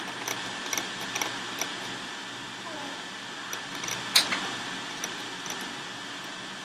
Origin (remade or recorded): recorded